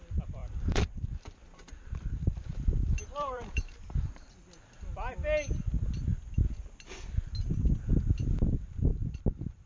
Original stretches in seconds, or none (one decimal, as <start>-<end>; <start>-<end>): 0.0-0.4; 4.1-8.9